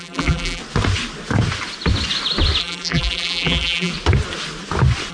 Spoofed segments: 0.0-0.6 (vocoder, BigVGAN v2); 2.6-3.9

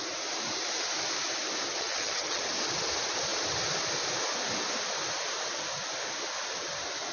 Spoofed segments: 1.8-2.4 (vocoder, HiFi-GAN)